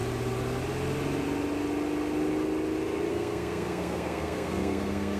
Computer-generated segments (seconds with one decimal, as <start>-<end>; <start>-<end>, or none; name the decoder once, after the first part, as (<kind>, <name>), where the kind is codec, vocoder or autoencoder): 3.1-5.2 (codec, SNAC)